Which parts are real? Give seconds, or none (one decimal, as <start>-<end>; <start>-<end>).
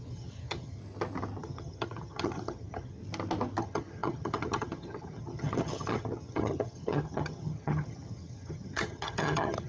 0.8-1.4; 3.0-3.6